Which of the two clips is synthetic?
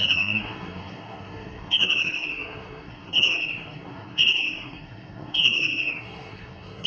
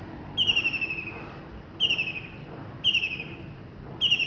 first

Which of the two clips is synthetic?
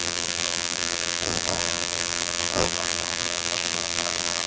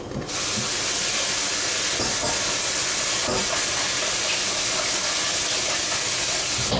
first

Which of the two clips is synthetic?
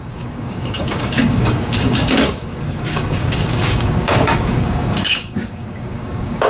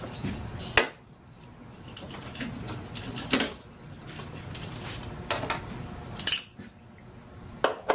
first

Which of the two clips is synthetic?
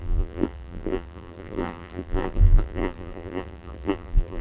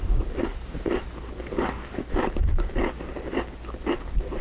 first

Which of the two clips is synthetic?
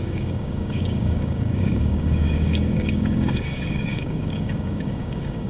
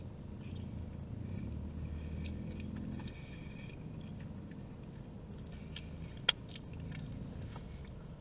first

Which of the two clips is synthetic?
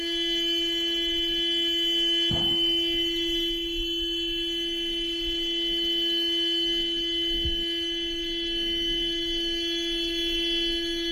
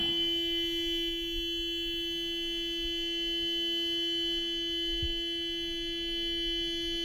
first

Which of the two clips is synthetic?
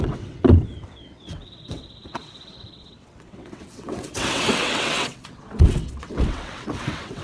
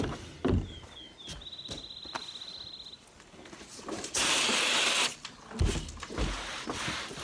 first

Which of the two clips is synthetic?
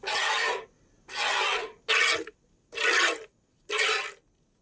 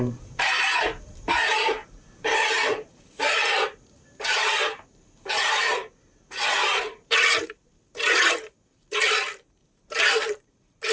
second